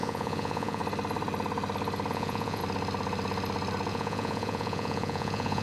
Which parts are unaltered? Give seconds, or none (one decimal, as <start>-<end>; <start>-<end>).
0.8-2.1; 2.6-3.9